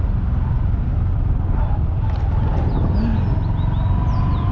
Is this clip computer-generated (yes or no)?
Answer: no